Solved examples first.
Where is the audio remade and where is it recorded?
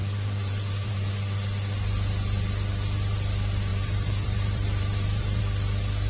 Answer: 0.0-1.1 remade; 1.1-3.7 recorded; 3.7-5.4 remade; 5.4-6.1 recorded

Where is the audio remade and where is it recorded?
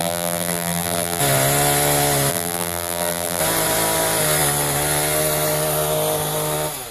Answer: 0.0-1.2 remade; 1.2-2.3 recorded; 2.3-3.4 remade; 3.4-6.9 recorded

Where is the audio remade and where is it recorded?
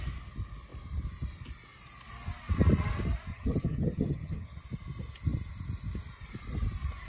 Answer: 0.0-3.3 recorded; 3.3-4.6 remade; 4.6-7.1 recorded